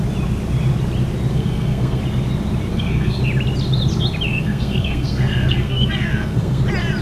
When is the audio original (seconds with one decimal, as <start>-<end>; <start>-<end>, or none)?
0.0-1.3; 2.0-2.7; 3.2-4.3; 6.6-7.0